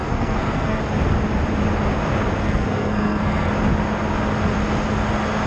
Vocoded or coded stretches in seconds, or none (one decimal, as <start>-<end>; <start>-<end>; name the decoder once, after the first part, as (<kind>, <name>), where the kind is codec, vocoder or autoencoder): 0.0-0.8 (codec, SNAC); 2.4-3.5